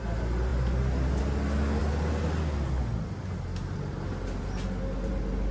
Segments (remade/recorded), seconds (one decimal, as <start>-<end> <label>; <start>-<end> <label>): 0.0-5.5 recorded

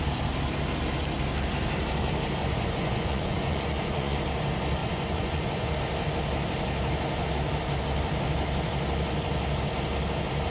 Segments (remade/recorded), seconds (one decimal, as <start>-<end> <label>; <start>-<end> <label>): 0.0-2.4 recorded; 2.4-4.2 remade; 4.2-4.8 recorded; 4.8-5.7 remade; 5.7-10.5 recorded

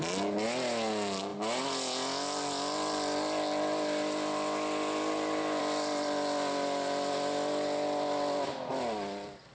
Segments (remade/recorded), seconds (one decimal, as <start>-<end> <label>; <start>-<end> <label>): 0.0-9.5 recorded

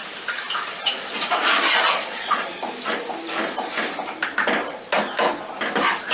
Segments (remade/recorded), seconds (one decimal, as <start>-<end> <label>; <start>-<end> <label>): 0.0-0.7 recorded; 0.7-1.5 remade; 1.5-1.9 recorded; 1.9-2.7 remade; 2.7-6.1 recorded